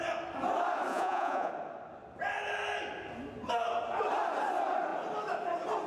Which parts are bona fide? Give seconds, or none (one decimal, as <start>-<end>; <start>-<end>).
0.0-0.9; 1.5-5.9